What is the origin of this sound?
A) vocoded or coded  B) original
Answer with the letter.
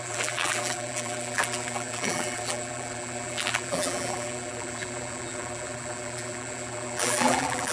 A